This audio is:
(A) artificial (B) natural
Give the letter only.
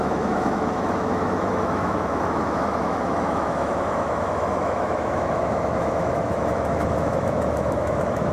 A